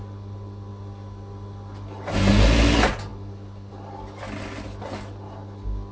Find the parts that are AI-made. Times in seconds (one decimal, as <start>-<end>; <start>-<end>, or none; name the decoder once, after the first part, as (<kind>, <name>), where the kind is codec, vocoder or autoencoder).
none